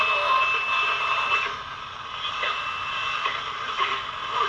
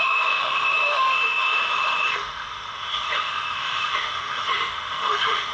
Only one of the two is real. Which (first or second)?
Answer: first